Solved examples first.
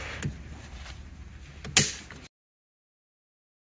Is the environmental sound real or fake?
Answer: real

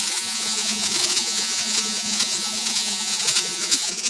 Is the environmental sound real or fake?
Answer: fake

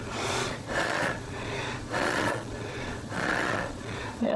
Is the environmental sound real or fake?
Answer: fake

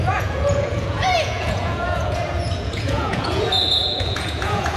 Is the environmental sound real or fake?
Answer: fake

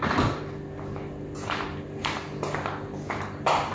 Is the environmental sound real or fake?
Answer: real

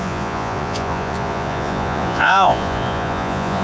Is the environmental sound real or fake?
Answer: fake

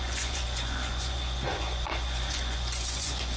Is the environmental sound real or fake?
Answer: fake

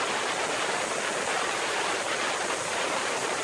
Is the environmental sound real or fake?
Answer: real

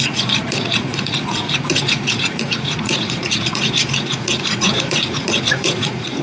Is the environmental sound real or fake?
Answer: fake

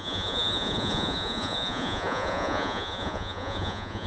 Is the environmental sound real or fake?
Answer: fake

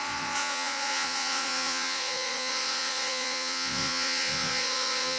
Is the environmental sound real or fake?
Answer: fake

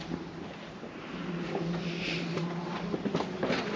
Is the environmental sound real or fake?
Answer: real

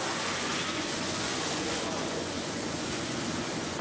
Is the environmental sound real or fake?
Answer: fake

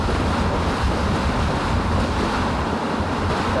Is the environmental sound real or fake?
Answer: real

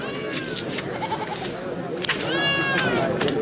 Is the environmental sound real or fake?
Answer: real